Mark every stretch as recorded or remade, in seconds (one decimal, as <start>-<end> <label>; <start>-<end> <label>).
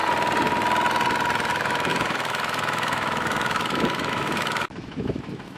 0.0-1.5 recorded; 1.5-5.6 remade